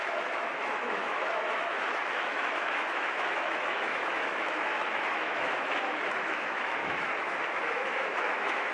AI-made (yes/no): yes